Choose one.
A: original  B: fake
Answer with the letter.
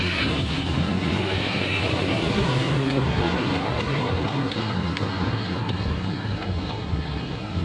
B